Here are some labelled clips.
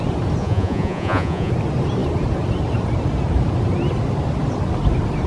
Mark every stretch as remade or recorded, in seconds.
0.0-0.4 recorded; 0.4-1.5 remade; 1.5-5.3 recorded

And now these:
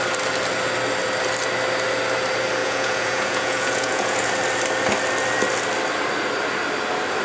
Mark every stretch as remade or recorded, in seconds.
0.0-2.6 recorded; 2.6-4.3 remade; 4.3-7.2 recorded

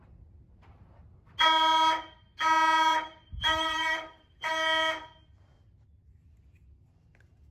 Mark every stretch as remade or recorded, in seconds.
0.0-2.9 recorded; 2.9-4.5 remade; 4.5-7.5 recorded